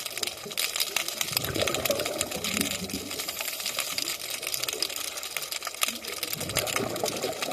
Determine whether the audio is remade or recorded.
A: recorded